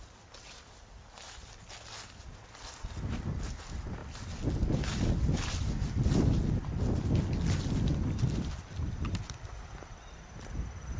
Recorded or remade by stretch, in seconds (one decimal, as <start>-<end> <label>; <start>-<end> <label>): 0.0-11.0 recorded